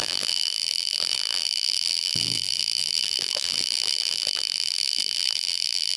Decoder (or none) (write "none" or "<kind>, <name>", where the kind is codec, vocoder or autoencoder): vocoder, BigVGAN v2